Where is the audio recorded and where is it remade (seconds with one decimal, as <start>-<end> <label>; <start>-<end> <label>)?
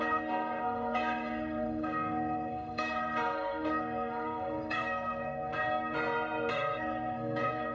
0.0-5.5 remade; 5.5-6.5 recorded; 6.5-7.7 remade